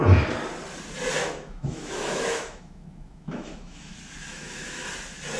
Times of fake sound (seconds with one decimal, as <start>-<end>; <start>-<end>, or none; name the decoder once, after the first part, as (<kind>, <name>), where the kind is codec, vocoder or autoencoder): 1.2-3.9 (autoencoder, DAC-VAE); 4.3-4.9